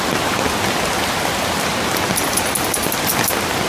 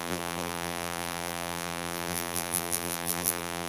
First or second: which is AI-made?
second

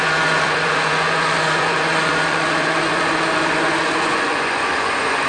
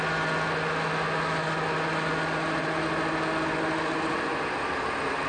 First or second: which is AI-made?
first